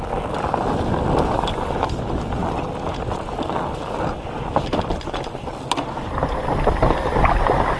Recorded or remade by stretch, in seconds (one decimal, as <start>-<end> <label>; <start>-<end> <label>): 0.0-7.8 recorded